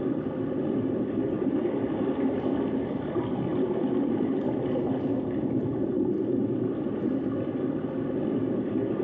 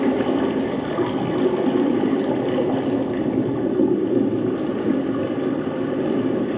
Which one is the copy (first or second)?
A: first